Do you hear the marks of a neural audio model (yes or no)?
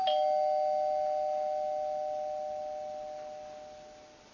no